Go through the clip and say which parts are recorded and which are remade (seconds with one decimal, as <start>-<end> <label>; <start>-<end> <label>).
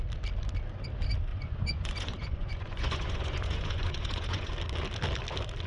0.0-1.3 recorded; 1.3-4.5 remade; 4.5-5.7 recorded